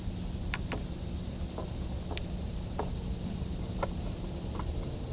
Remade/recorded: recorded